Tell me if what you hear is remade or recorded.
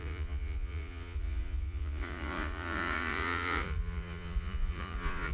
remade